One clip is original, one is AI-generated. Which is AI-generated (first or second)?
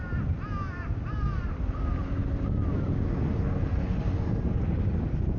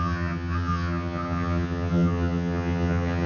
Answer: second